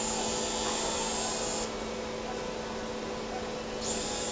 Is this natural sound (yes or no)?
yes